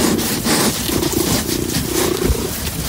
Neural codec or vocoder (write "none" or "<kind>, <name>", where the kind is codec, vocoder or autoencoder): none